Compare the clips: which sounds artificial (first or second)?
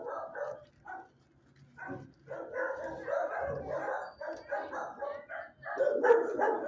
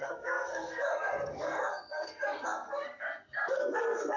second